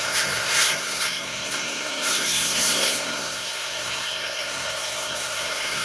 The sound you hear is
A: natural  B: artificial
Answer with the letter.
B